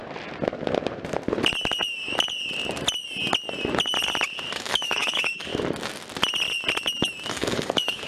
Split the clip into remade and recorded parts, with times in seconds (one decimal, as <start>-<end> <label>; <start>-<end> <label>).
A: 0.0-4.5 recorded; 4.5-5.5 remade; 5.5-7.3 recorded; 7.3-8.1 remade